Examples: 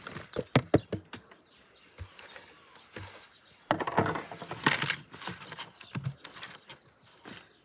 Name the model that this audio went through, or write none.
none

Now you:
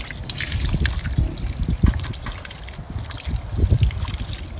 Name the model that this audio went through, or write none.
none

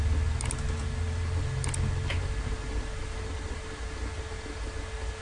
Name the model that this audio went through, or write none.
none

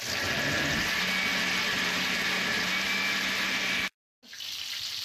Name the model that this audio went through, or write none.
none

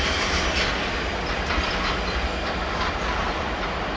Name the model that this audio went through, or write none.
none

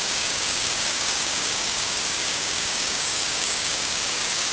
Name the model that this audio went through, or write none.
codec, DAC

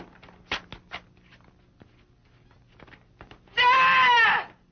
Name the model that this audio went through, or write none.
none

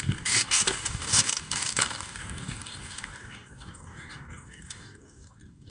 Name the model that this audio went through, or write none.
codec, DAC